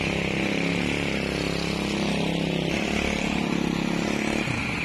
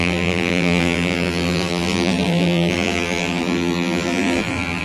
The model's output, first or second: second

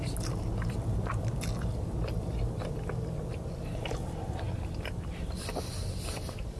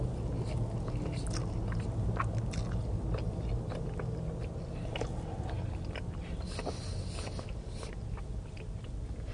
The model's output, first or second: first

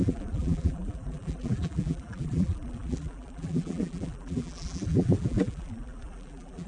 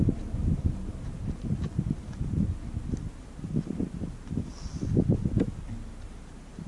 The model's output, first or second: first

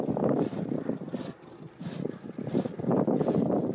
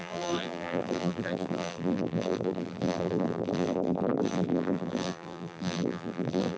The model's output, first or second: second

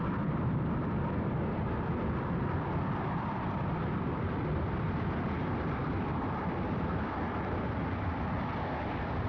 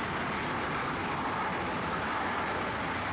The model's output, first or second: first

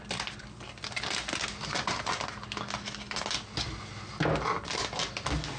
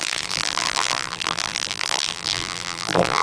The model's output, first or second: second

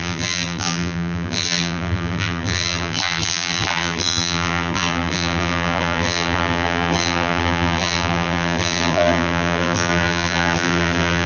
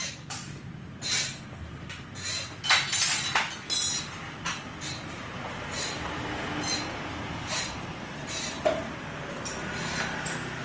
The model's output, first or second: first